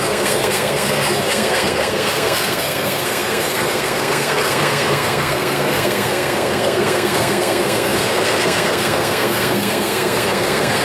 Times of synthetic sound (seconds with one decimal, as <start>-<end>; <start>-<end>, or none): 0.0-10.8